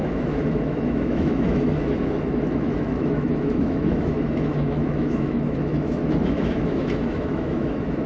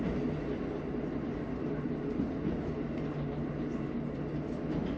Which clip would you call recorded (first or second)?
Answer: second